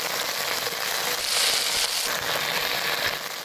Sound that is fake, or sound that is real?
real